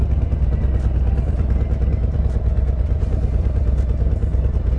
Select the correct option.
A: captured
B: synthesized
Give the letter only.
B